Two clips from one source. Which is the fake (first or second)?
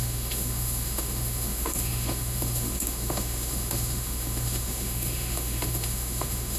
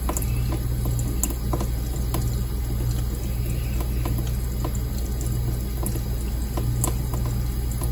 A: first